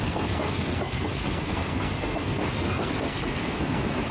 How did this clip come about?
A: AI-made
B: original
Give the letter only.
A